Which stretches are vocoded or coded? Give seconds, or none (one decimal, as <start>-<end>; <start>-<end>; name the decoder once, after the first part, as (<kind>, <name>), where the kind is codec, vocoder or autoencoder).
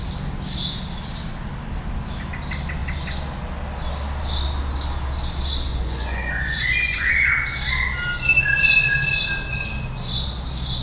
5.7-7.1 (vocoder, Vocos)